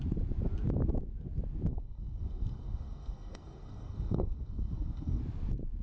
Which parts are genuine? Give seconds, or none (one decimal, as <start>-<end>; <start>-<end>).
0.0-1.7; 5.2-5.8